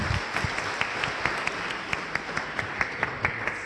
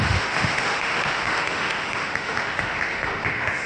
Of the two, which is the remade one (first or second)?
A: second